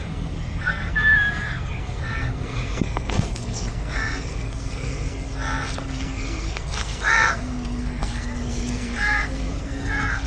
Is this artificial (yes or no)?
yes